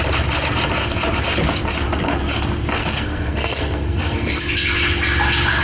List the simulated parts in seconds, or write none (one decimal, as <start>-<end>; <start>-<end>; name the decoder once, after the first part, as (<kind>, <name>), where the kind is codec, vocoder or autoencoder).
2.8-4.4 (codec, SNAC)